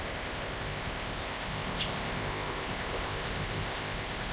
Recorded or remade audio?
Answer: remade